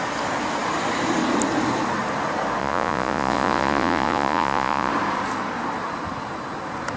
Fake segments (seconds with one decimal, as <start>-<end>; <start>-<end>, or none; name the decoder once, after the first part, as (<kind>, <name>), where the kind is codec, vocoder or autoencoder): 2.6-4.9 (vocoder, Vocos)